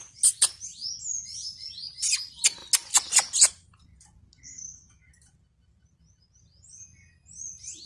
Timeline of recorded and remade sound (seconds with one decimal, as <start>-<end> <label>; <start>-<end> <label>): 0.0-4.5 recorded; 4.5-5.1 remade; 5.1-7.9 recorded